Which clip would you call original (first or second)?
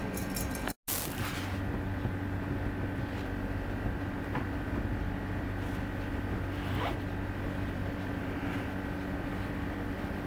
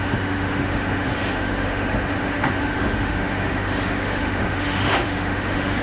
first